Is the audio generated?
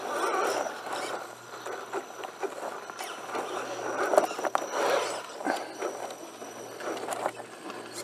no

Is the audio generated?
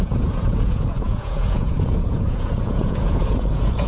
yes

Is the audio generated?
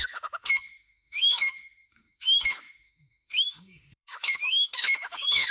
yes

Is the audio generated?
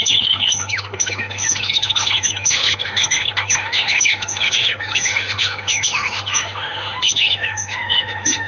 yes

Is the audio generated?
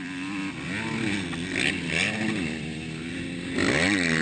no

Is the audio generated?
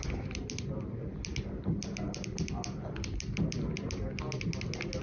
no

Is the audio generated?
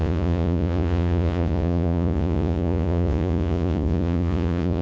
yes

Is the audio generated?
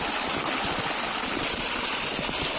no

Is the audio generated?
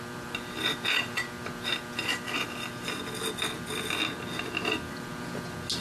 no